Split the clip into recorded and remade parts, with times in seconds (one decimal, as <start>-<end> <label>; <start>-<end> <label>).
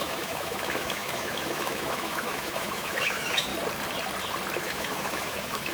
0.0-3.5 remade; 3.5-4.6 recorded; 4.6-5.7 remade